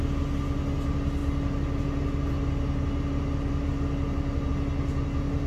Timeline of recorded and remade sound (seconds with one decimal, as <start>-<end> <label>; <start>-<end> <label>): 0.0-5.5 recorded